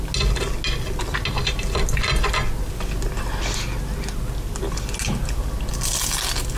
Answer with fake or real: real